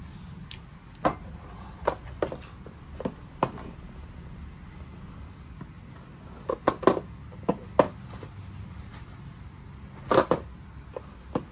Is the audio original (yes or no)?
yes